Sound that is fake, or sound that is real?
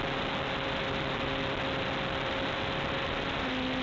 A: real